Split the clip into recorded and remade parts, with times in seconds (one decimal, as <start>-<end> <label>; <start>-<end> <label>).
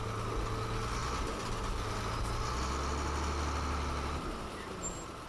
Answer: 0.0-5.3 recorded